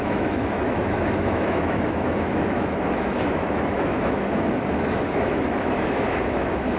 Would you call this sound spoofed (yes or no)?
yes